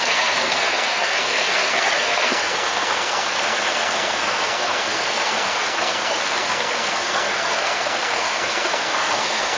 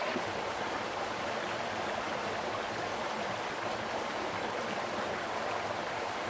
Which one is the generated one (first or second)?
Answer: first